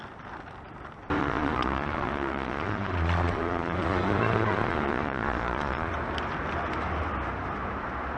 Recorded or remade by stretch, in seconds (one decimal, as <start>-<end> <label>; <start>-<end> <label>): 0.0-1.2 recorded; 1.2-5.9 remade; 5.9-8.2 recorded